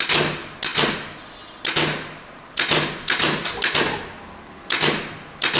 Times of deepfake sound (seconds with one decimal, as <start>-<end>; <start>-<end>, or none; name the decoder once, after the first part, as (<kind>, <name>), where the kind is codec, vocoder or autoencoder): none